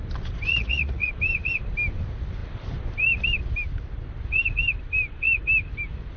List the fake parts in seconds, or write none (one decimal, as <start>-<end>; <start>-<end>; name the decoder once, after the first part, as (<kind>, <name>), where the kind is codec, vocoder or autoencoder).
0.5-1.1 (vocoder, Vocos)